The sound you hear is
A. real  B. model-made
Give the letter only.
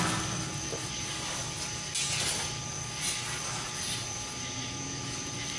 A